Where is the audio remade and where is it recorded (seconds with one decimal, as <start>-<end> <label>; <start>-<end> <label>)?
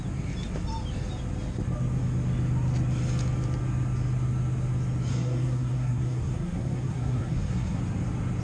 0.0-5.1 recorded; 5.1-7.8 remade; 7.8-8.4 recorded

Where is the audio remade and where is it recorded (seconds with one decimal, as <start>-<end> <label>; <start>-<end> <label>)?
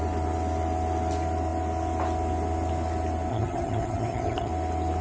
0.0-3.3 recorded; 3.3-4.5 remade; 4.5-5.0 recorded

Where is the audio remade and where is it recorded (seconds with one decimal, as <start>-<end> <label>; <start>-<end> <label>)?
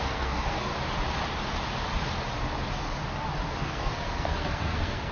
0.0-0.7 remade; 0.7-3.6 recorded; 3.6-5.1 remade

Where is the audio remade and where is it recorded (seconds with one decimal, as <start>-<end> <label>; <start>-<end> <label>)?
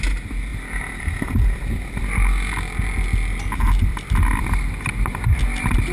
0.0-0.5 recorded; 0.5-2.0 remade; 2.0-3.9 recorded; 3.9-4.7 remade; 4.7-5.9 recorded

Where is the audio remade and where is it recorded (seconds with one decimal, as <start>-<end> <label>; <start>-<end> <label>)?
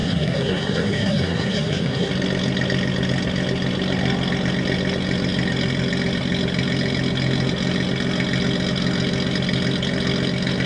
0.0-2.1 remade; 2.1-10.7 recorded